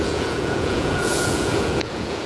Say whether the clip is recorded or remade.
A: remade